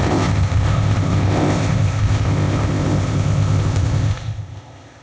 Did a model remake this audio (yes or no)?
yes